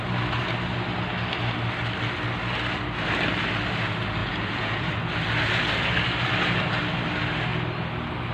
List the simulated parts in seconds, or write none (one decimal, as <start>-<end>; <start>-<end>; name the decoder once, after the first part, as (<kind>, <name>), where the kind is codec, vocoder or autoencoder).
4.2-4.9 (vocoder, Vocos)